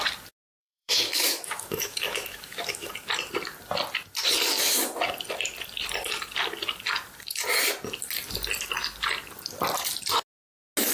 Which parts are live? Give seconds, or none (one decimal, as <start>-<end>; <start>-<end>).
0.0-0.6; 2.9-10.9